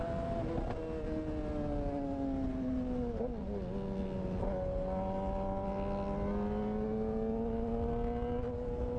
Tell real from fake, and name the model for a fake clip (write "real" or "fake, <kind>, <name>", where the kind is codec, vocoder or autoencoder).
real